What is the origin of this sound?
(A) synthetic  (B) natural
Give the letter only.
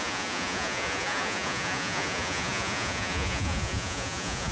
A